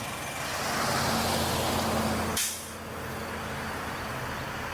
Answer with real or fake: real